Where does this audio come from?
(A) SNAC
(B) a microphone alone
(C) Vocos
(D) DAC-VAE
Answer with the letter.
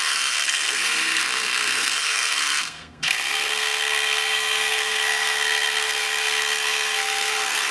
A